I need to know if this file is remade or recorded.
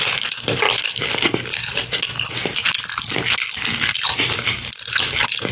recorded